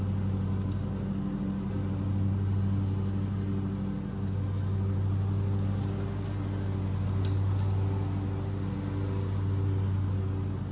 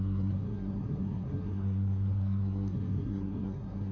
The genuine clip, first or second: first